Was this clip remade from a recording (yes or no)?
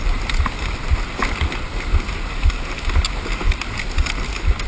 no